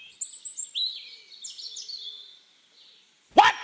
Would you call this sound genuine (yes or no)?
yes